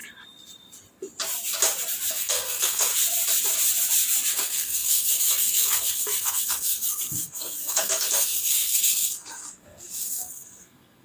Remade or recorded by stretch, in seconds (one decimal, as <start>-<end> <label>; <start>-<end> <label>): 0.0-2.1 recorded; 2.1-2.9 remade; 2.9-4.3 recorded; 4.3-11.0 remade